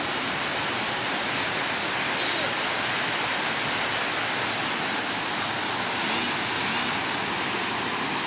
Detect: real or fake real